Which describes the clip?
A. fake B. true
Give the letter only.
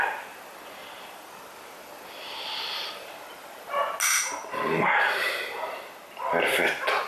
B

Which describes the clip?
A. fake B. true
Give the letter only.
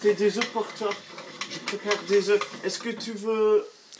B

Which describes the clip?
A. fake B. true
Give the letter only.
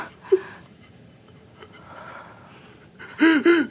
A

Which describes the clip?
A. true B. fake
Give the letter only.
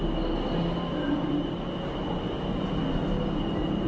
A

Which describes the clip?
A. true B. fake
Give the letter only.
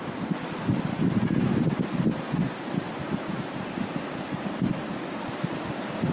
B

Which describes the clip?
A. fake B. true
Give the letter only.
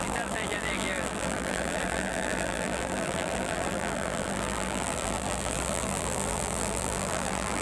A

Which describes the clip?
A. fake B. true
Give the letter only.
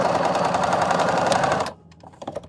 A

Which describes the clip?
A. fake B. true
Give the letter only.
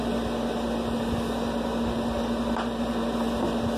B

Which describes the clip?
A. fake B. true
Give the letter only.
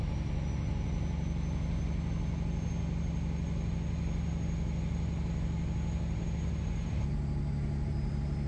B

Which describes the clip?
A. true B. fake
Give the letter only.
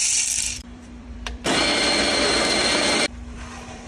B